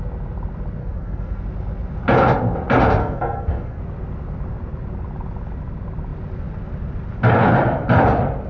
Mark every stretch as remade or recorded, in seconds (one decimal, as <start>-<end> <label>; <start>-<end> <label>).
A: 0.0-0.8 recorded; 0.8-1.4 remade; 1.4-3.0 recorded; 3.0-3.8 remade; 3.8-8.5 recorded

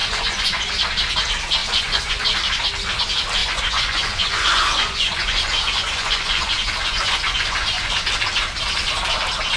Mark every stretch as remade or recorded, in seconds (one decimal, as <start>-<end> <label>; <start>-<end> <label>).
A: 0.0-0.7 remade; 0.7-1.6 recorded; 1.6-2.2 remade; 2.2-3.4 recorded; 3.4-8.0 remade; 8.0-9.6 recorded

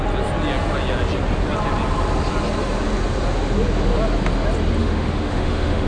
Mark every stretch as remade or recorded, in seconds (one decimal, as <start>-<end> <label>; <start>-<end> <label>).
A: 0.0-4.8 recorded; 4.8-5.9 remade

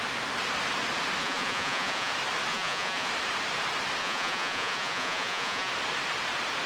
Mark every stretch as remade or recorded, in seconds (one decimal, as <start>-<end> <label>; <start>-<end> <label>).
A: 0.0-1.2 recorded; 1.2-2.1 remade; 2.1-2.5 recorded; 2.5-3.1 remade; 3.1-4.0 recorded; 4.0-5.7 remade; 5.7-6.7 recorded

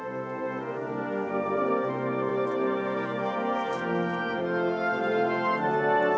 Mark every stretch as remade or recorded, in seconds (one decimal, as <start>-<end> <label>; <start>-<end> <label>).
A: 0.0-6.2 recorded

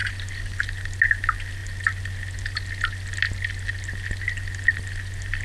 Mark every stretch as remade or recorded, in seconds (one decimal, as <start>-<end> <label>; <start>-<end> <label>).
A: 0.0-5.4 recorded

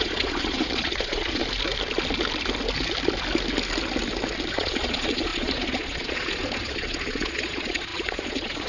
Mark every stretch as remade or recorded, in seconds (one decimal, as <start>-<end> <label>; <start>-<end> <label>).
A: 0.0-1.4 remade; 1.4-4.5 recorded; 4.5-8.7 remade